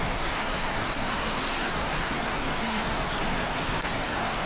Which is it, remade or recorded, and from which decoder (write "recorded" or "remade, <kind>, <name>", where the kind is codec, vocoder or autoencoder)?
remade, codec, SNAC